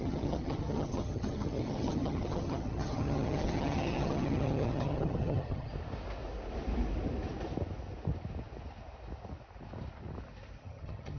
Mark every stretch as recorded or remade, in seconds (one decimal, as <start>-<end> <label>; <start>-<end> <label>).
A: 0.0-5.7 remade; 5.7-10.6 recorded; 10.6-11.2 remade